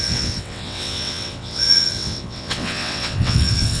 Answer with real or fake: fake